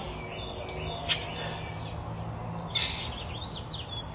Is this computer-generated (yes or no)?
no